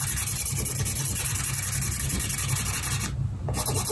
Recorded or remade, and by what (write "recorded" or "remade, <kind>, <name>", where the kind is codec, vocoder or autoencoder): recorded